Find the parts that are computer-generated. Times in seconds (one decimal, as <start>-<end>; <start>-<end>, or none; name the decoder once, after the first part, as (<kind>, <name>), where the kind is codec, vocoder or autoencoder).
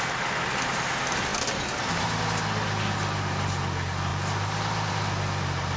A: none